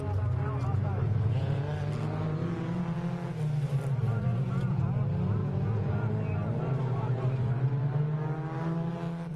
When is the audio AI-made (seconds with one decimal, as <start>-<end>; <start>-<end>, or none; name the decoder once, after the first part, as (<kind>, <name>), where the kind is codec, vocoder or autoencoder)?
1.0-1.6 (vocoder, Vocos); 4.3-4.8; 5.4-6.1